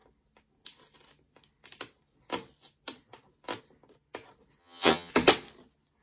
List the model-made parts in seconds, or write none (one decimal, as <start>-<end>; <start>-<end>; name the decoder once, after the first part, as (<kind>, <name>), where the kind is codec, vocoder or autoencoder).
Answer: 4.6-5.1 (vocoder, HiFi-GAN)